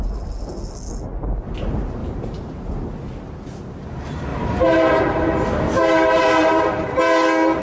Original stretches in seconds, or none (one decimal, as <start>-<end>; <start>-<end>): 0.0-2.0; 2.7-4.3; 7.0-7.6